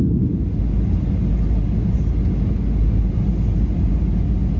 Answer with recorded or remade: recorded